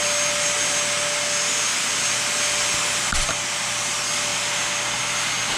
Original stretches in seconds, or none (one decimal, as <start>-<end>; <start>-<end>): 0.0-5.6